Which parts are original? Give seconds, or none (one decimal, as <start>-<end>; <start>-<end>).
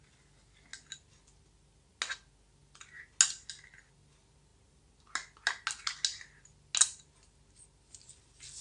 0.0-8.6